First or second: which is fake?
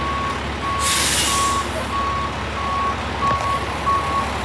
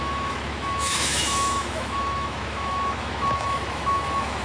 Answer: second